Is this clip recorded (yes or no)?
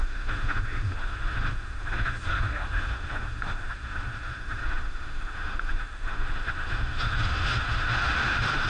no